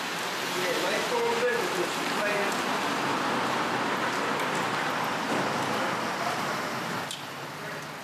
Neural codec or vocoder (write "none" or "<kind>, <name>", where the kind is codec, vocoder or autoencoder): none